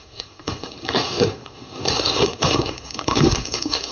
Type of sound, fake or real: fake